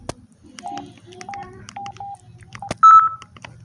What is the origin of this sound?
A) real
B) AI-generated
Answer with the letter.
A